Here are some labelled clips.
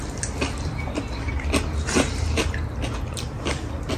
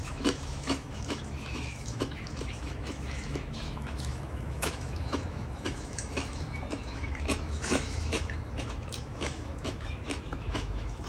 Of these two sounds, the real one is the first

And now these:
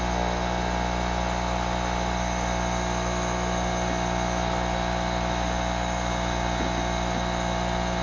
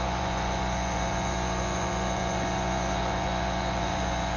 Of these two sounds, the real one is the first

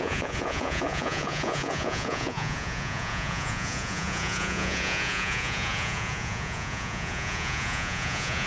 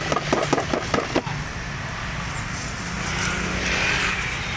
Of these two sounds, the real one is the second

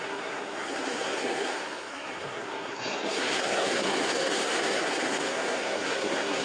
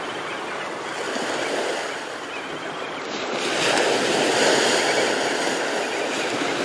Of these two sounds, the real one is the second